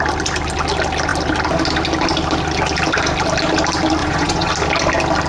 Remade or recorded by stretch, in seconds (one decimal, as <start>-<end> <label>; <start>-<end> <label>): 0.0-4.0 recorded; 4.0-4.5 remade; 4.5-5.3 recorded